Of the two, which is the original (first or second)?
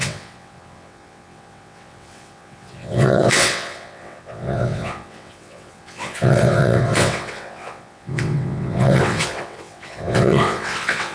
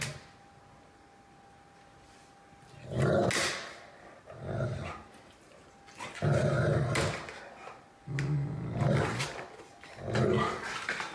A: second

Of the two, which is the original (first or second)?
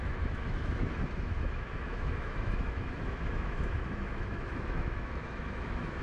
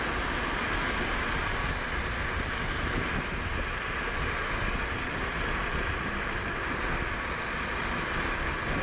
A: second